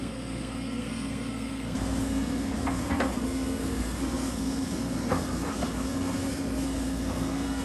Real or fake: fake